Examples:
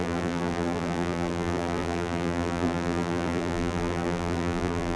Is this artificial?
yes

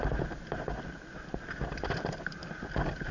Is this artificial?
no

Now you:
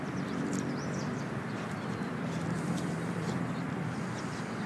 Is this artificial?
yes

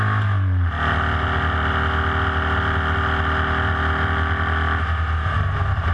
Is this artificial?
no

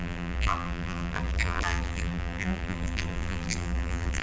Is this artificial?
yes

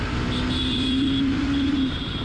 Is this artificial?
yes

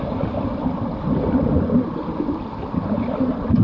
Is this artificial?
yes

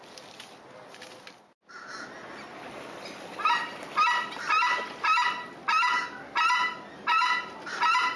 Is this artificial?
no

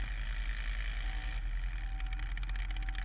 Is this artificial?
no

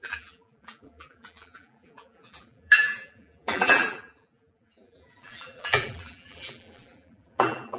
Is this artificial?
yes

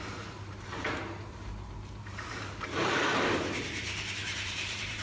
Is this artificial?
yes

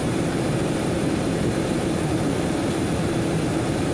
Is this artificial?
yes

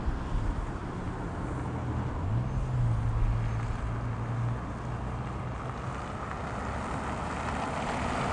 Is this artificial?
no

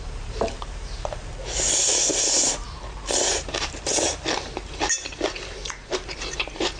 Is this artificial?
yes